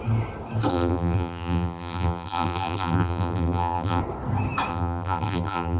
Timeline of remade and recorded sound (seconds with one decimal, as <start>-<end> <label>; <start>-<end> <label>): 0.0-0.7 recorded; 0.7-4.0 remade; 4.0-4.7 recorded; 4.7-5.8 remade